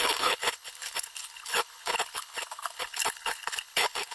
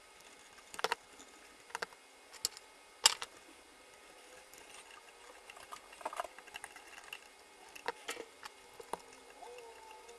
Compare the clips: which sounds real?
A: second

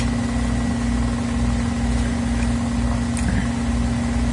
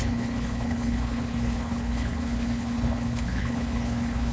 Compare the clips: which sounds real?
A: first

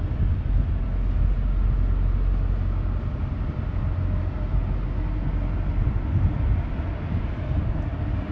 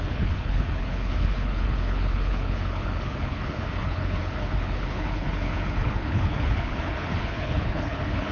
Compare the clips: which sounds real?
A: first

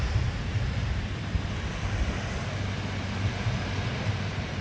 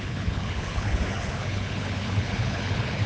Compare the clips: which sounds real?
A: first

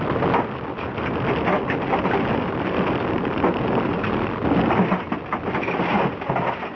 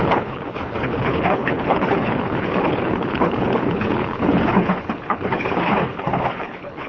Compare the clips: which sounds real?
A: first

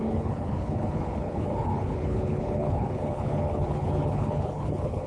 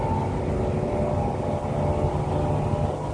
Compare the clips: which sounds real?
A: second